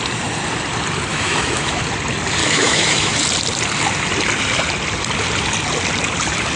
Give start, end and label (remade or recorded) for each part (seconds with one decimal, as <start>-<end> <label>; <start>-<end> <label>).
0.0-1.1 recorded; 1.1-1.8 remade; 1.8-2.4 recorded; 2.4-3.2 remade; 3.2-6.6 recorded